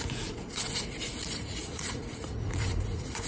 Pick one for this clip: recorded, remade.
remade